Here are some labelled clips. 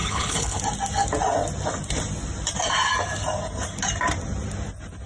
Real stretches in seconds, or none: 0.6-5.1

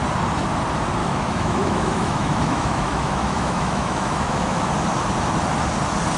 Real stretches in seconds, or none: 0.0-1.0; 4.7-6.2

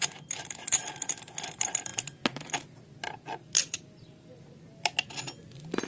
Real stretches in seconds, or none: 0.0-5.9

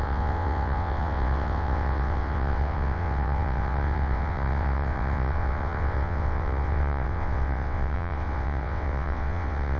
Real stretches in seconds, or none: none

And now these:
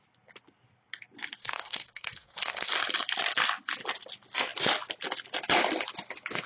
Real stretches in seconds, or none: 0.0-1.4; 2.7-6.5

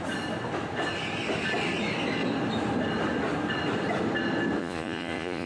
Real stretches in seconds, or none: 0.0-4.6